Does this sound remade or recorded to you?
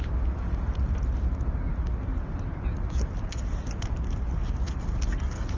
recorded